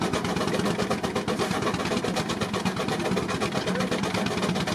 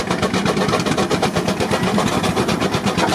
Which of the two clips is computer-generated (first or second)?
second